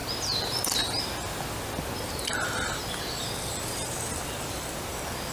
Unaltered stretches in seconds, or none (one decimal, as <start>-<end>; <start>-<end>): 0.0-5.3